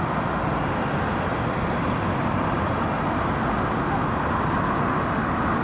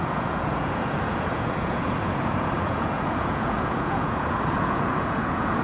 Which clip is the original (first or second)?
first